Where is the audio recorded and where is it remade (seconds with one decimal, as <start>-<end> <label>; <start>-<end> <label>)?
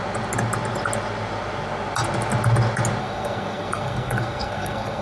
0.0-3.0 recorded; 3.0-5.0 remade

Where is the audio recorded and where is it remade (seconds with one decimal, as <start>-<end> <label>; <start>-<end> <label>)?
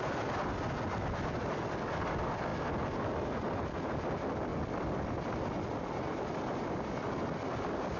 0.0-8.0 recorded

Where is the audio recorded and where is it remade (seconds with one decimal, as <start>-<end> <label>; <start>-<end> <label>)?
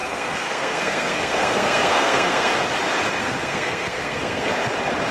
0.0-2.5 remade; 2.5-3.2 recorded; 3.2-4.5 remade; 4.5-5.1 recorded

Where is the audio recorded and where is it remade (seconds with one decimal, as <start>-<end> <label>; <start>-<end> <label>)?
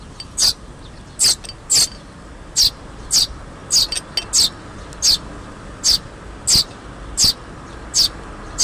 0.0-8.6 recorded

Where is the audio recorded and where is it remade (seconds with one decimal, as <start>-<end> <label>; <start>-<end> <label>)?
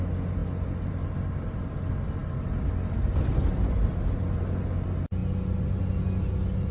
0.0-6.7 recorded